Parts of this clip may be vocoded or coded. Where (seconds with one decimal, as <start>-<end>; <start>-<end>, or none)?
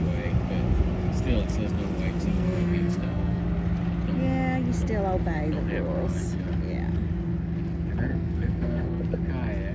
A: 2.3-3.4; 8.1-9.0